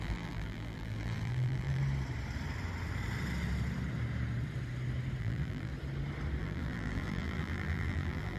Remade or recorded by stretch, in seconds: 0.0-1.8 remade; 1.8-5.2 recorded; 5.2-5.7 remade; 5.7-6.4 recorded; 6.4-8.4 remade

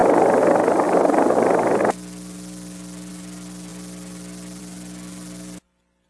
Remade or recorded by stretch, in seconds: 0.0-6.1 recorded